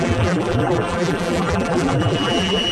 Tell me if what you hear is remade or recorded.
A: remade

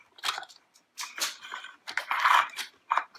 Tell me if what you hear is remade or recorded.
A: recorded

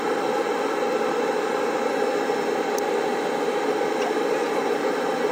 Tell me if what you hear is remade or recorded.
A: recorded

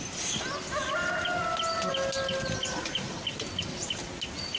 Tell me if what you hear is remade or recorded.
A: recorded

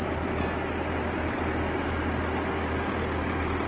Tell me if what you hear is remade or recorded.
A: recorded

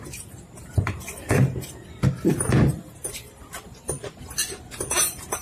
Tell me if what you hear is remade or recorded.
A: remade